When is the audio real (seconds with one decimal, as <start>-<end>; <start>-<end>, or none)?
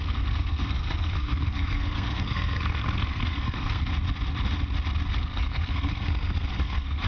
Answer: 3.9-5.1